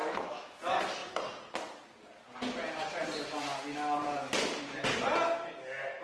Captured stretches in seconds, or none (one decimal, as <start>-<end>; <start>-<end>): 0.6-6.0